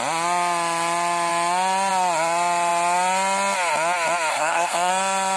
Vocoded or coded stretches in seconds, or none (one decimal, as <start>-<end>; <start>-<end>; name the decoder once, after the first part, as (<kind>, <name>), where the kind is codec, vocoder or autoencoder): 4.3-4.9 (codec, SNAC)